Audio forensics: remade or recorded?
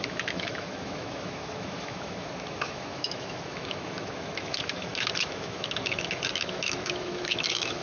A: remade